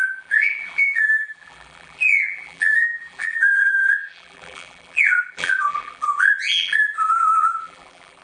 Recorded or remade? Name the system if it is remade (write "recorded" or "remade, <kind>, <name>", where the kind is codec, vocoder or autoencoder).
remade, vocoder, BigVGAN v2